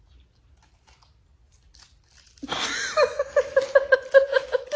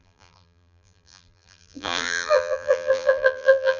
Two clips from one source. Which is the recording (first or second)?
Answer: first